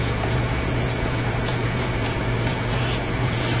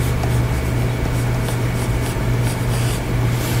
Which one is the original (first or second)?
second